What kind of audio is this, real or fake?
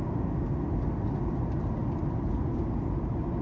real